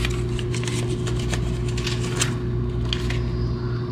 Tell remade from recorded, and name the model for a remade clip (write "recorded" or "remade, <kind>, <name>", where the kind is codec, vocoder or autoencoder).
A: recorded